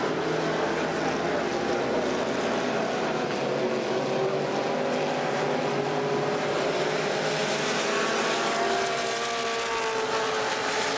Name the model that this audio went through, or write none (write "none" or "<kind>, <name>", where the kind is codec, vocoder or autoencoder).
none